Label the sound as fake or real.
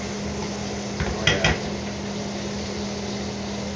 real